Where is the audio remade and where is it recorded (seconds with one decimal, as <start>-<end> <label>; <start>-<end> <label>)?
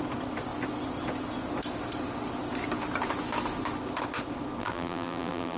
0.0-4.6 recorded; 4.6-5.6 remade